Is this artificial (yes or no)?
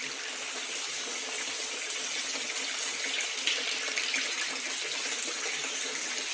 no